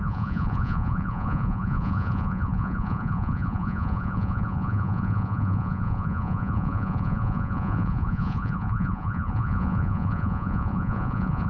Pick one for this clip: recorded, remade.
remade